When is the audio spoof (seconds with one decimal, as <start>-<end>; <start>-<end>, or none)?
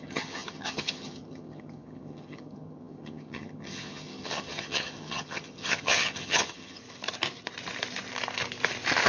0.0-6.8